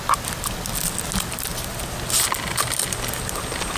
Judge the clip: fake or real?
real